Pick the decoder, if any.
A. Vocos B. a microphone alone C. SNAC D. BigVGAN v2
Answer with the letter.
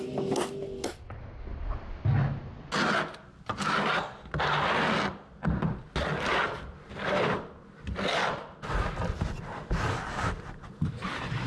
B